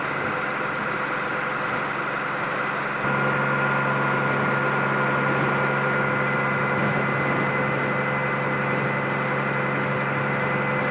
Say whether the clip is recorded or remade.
recorded